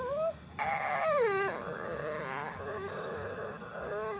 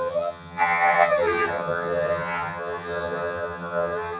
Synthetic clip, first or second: second